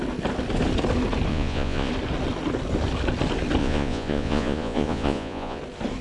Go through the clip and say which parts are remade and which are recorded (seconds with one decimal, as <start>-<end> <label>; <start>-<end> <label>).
0.0-1.3 recorded; 1.3-1.9 remade; 1.9-3.6 recorded; 3.6-5.6 remade; 5.6-6.0 recorded